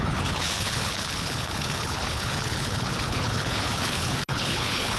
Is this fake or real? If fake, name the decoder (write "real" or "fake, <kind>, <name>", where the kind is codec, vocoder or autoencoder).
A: fake, codec, HILCodec